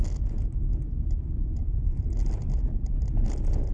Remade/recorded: recorded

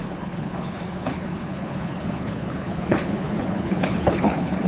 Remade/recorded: remade